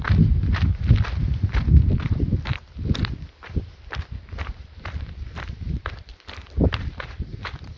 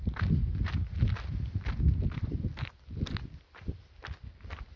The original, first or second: second